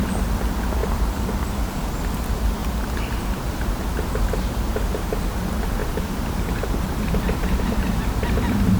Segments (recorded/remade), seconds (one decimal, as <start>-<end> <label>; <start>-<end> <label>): 0.0-0.8 recorded; 0.8-1.5 remade; 1.5-2.6 recorded; 2.6-3.7 remade; 3.7-5.8 recorded; 5.8-7.6 remade; 7.6-8.8 recorded